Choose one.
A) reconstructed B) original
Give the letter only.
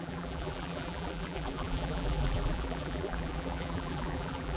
A